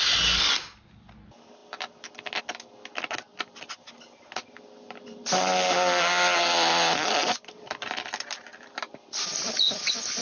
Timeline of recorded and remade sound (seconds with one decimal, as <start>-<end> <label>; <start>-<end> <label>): 0.0-3.3 recorded; 3.3-3.9 remade; 3.9-7.2 recorded; 7.2-9.2 remade; 9.2-10.2 recorded